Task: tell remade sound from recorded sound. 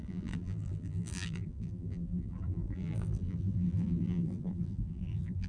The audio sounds remade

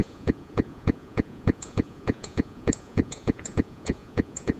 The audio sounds remade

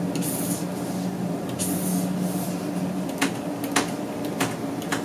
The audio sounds recorded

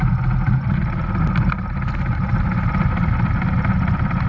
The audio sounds recorded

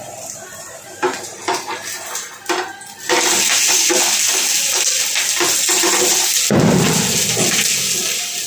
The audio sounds recorded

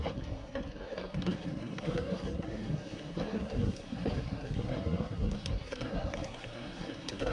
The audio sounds remade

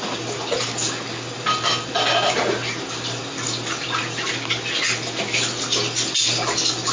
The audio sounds recorded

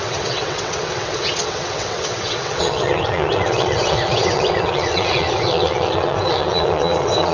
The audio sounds remade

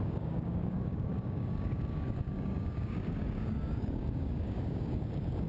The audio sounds remade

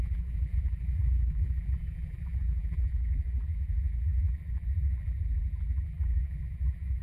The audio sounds remade